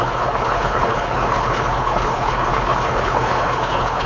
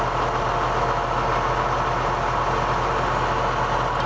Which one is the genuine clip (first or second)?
second